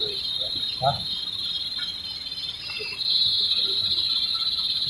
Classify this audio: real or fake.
real